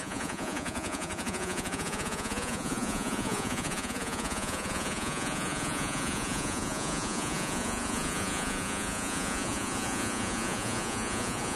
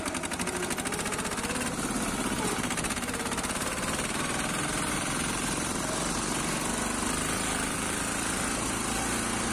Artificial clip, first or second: first